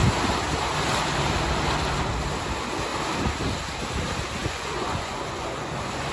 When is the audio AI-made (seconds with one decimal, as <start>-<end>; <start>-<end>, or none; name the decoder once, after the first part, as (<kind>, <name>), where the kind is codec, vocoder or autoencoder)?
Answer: 4.4-6.1 (vocoder, Vocos)